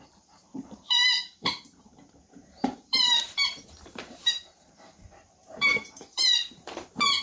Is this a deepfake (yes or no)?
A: yes